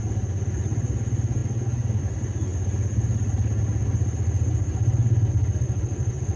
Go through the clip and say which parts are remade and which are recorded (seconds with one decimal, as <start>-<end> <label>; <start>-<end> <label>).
0.0-6.4 recorded